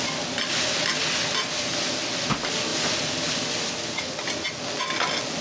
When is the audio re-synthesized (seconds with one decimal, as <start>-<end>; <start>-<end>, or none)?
none